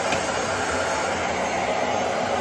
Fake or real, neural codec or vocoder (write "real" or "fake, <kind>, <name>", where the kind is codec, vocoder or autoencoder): real